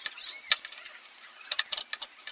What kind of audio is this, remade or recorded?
recorded